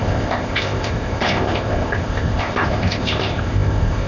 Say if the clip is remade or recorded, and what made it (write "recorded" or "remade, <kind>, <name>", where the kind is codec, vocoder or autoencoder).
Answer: remade, codec, ZipCodec